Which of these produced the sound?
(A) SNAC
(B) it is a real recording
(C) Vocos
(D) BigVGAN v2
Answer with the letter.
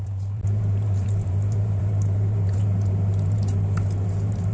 D